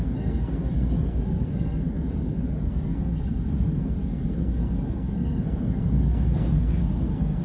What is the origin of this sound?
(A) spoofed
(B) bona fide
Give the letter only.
A